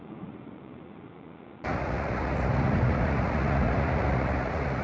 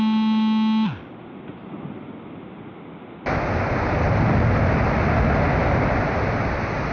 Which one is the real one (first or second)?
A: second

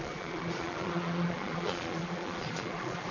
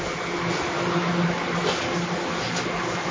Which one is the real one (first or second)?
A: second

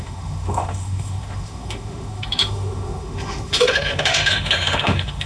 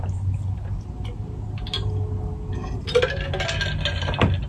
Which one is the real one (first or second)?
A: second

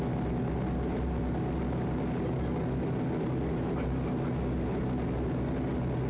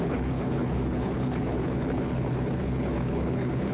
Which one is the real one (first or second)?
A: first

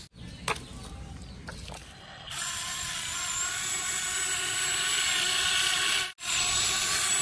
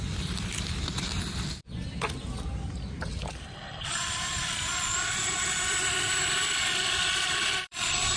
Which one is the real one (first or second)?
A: first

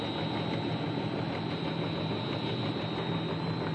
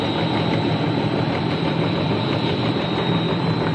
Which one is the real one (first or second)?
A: first